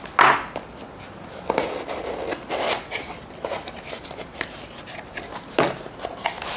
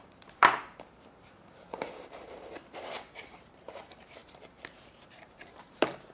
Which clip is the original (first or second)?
first